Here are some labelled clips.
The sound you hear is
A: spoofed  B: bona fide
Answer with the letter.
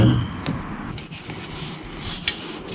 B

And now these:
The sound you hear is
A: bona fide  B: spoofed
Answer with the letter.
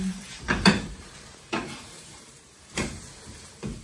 B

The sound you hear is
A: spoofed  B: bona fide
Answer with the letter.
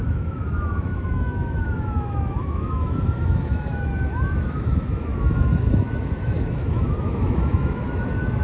A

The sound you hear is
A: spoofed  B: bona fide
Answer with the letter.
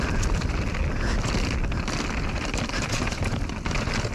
B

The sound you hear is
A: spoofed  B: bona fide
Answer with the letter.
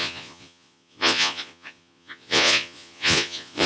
A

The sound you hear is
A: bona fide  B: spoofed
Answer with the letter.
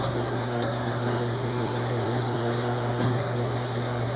B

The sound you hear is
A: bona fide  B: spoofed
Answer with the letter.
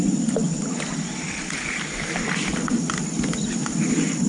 A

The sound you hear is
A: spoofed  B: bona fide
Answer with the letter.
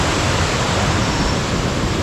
B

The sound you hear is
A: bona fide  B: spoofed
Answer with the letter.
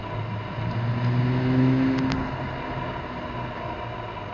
A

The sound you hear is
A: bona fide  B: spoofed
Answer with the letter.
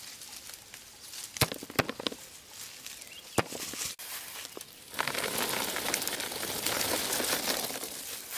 A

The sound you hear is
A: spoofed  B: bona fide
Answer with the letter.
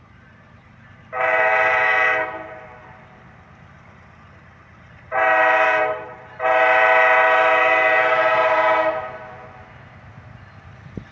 A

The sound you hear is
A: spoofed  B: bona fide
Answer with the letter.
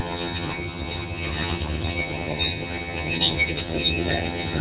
A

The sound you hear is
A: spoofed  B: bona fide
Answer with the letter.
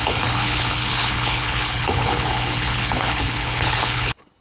A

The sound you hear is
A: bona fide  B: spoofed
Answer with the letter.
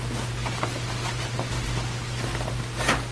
A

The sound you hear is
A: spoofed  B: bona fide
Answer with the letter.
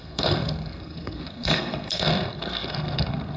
A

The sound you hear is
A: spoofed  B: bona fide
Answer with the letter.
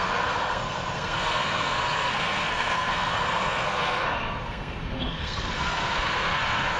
A